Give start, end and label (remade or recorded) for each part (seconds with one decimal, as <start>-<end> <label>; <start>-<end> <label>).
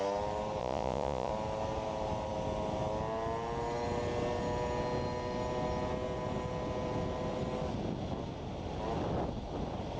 0.0-0.6 recorded; 0.6-1.3 remade; 1.3-10.0 recorded